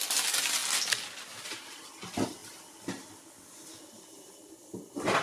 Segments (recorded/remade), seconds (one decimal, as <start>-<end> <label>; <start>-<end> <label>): 0.0-5.2 recorded